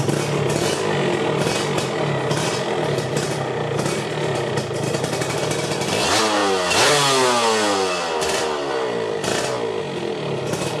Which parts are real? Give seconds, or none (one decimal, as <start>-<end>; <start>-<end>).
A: 0.0-10.8